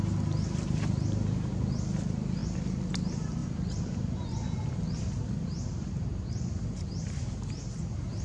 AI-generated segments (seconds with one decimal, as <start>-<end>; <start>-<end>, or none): 0.0-8.2